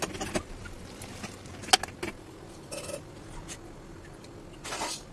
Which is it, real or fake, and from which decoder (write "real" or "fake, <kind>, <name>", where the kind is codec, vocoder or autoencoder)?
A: real